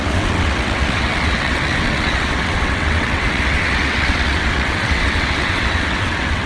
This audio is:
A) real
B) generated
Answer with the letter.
B